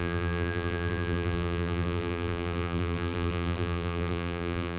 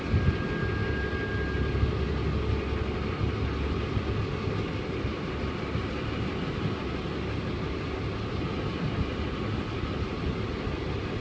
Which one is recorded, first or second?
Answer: second